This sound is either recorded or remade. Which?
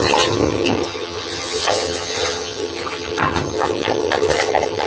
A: remade